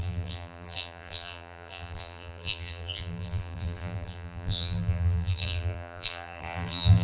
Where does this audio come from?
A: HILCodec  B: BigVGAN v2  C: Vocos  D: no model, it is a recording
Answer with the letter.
B